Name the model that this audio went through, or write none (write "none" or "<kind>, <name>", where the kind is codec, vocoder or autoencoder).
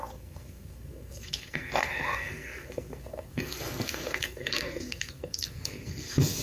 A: codec, SNAC